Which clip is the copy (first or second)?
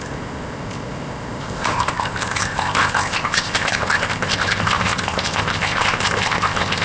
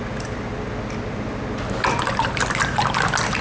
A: first